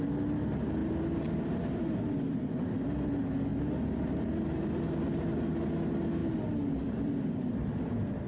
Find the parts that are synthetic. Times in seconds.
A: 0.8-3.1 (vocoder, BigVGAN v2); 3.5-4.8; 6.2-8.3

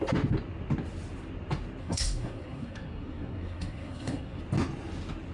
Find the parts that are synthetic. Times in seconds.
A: 1.8-4.4 (codec, SNAC)

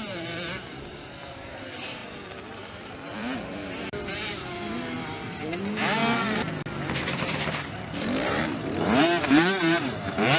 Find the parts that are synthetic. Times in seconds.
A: 0.0-2.0 (vocoder, BigVGAN v2); 2.6-6.0; 7.2-10.4

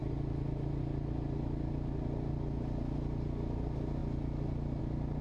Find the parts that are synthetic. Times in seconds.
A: none

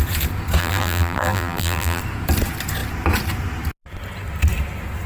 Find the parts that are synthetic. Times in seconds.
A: 0.6-2.0 (vocoder, BigVGAN v2)